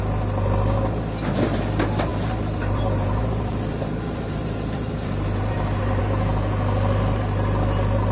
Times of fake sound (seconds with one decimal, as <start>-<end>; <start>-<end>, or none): 2.1-6.0